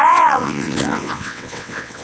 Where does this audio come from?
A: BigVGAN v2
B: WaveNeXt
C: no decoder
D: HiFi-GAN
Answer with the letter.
B